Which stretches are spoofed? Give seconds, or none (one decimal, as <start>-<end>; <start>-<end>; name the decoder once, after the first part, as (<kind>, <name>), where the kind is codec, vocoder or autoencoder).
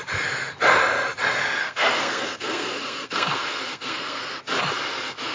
1.6-4.2 (codec, SNAC)